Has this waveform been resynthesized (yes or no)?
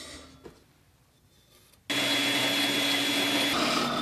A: no